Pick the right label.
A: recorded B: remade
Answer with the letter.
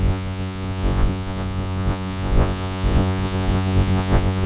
B